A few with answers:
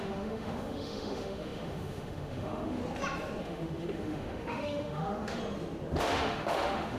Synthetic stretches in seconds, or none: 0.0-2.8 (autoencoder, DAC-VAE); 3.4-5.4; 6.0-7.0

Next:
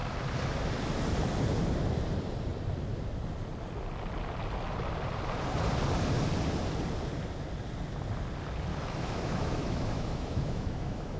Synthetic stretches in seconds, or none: 8.7-11.2 (autoencoder, DAC-VAE)

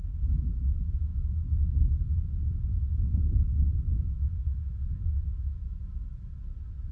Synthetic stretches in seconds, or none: 1.1-1.9 (autoencoder, DAC-VAE); 2.7-5.6

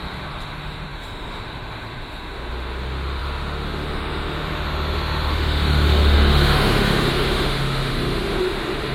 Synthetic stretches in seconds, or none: 0.0-8.9 (autoencoder, DAC-VAE)

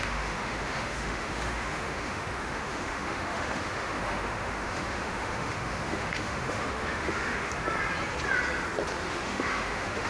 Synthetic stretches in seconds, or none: 0.0-7.5 (autoencoder, DAC-VAE); 9.1-10.1

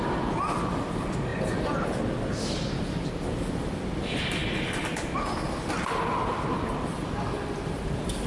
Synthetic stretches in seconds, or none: none

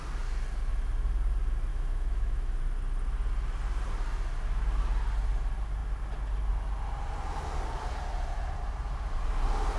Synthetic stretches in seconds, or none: 1.7-2.6 (autoencoder, DAC-VAE)

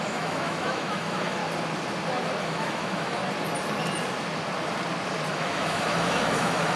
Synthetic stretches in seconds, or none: 0.0-1.4 (autoencoder, DAC-VAE); 2.4-3.2; 5.3-6.8